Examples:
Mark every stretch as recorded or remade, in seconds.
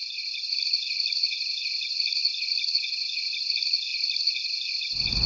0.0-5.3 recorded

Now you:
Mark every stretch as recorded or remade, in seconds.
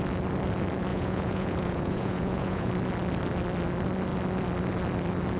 0.0-0.9 recorded; 0.9-2.7 remade; 2.7-5.4 recorded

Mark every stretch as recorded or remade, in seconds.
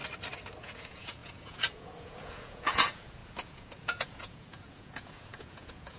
0.0-0.6 recorded; 0.6-6.0 remade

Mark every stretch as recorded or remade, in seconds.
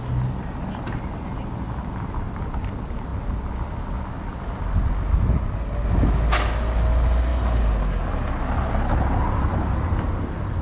0.0-10.6 recorded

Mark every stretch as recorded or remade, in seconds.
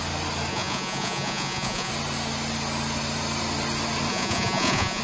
0.0-0.5 recorded; 0.5-1.9 remade; 1.9-4.1 recorded; 4.1-5.0 remade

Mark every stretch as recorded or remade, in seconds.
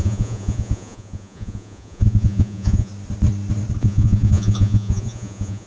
0.0-2.9 remade; 2.9-3.8 recorded; 3.8-5.7 remade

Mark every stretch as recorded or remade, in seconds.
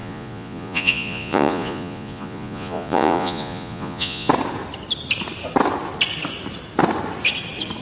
0.0-4.3 remade; 4.3-7.8 recorded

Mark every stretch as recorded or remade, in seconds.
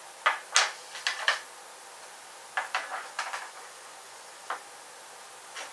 0.0-2.9 recorded; 2.9-4.6 remade; 4.6-5.7 recorded